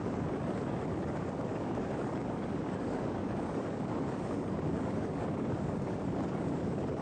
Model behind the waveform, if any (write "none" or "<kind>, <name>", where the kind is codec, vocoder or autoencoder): codec, DAC